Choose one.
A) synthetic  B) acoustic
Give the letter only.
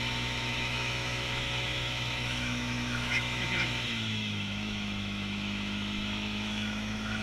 A